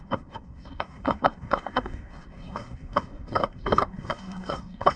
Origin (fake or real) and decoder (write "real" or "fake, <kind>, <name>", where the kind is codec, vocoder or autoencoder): fake, codec, SNAC